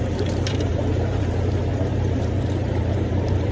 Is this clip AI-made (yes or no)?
yes